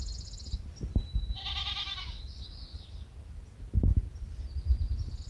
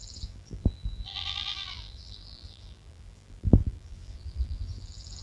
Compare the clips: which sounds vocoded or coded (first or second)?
second